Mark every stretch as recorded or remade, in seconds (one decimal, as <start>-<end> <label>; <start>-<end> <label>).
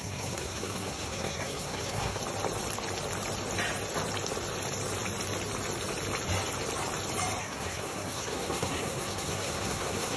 0.0-2.2 remade; 2.2-7.4 recorded; 7.4-10.2 remade